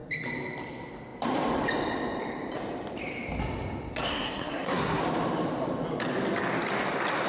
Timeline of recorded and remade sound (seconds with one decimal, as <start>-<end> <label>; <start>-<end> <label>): 0.0-4.1 recorded; 4.1-5.0 remade; 5.0-7.3 recorded